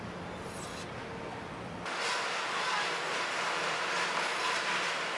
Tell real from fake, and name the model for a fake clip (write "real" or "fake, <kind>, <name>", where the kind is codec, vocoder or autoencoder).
real